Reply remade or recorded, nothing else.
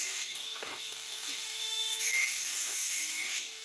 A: remade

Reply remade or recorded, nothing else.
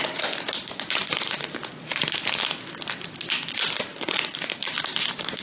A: recorded